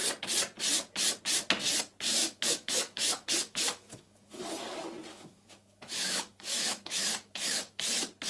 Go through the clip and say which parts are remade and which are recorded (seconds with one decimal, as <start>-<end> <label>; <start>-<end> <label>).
0.0-2.2 recorded; 2.2-4.4 remade; 4.4-5.1 recorded; 5.1-7.8 remade; 7.8-8.3 recorded